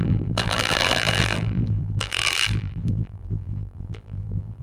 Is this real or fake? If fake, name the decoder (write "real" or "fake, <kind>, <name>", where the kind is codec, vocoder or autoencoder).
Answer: fake, vocoder, BigVGAN v2